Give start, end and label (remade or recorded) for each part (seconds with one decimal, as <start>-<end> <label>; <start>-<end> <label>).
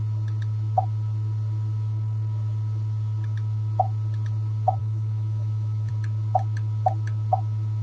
0.0-4.8 recorded; 4.8-5.9 remade; 5.9-7.8 recorded